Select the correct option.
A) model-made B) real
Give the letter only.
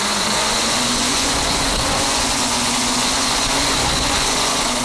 A